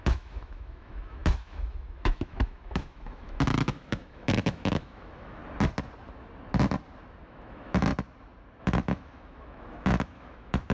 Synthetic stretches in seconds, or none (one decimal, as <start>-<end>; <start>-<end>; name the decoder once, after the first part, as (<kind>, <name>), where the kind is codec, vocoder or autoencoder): 0.0-5.4 (autoencoder, DAC-VAE); 7.2-7.9; 8.6-10.7